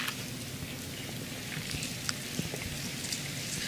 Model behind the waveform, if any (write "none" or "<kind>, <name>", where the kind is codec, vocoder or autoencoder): none